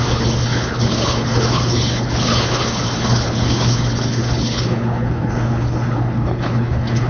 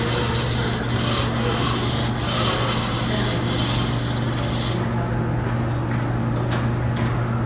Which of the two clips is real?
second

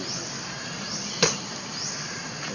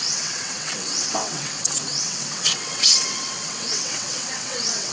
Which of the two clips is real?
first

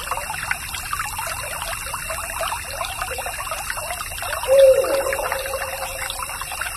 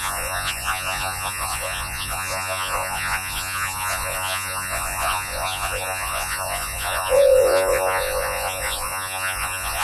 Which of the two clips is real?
first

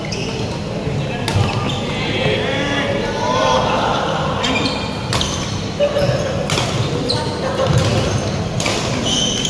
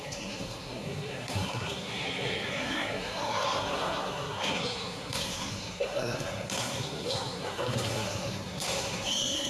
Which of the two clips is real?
first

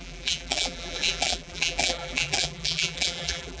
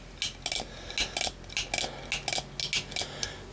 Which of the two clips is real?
second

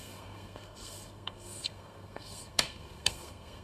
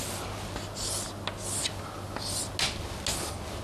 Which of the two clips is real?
second